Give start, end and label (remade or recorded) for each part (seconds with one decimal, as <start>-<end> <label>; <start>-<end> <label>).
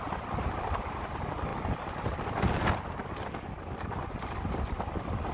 0.0-5.3 recorded